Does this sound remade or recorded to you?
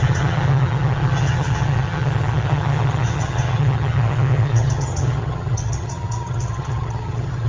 remade